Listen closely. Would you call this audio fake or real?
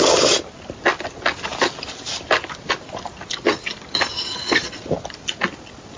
real